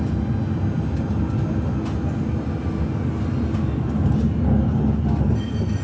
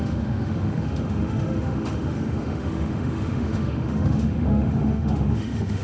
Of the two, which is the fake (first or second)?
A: second